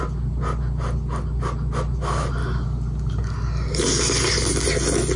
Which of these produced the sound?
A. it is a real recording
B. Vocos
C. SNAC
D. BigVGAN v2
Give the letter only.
A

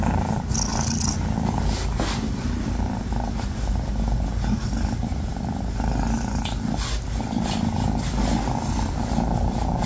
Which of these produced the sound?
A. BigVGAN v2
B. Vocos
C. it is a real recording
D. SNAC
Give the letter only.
C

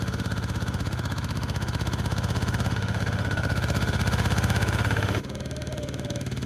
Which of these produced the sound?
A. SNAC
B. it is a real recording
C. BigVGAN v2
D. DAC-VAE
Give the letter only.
D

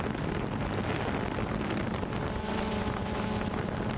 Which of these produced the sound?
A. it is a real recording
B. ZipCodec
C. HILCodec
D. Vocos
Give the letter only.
A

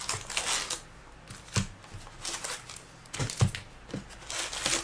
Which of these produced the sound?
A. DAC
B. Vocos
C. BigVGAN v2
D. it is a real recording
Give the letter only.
D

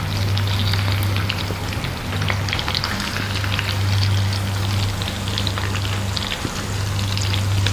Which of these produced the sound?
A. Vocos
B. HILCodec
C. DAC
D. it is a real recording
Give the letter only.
D